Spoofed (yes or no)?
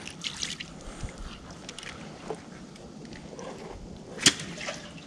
no